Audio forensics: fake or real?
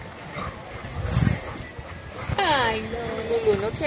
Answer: real